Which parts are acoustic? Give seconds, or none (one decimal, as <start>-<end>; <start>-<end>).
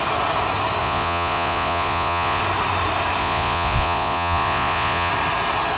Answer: 0.0-0.8; 2.4-3.2; 5.1-5.8